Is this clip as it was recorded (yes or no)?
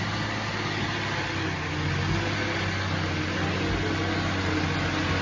yes